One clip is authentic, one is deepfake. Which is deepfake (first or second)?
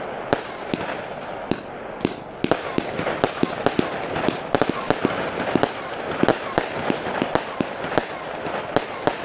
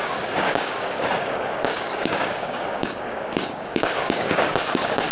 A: second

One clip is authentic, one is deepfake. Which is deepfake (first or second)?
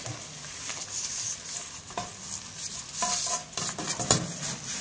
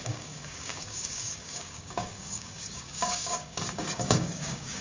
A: second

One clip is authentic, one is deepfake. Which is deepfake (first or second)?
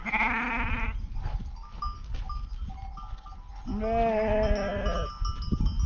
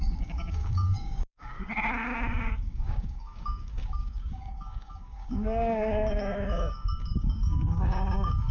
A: second